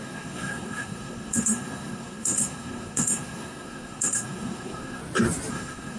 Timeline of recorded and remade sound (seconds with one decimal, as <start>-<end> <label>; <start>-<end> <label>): 0.0-5.0 remade; 5.0-5.5 recorded; 5.5-6.0 remade